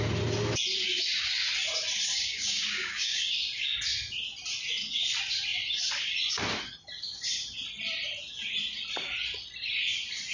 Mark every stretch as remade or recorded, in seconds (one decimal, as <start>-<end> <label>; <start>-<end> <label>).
0.0-2.1 recorded; 2.1-3.2 remade; 3.2-10.3 recorded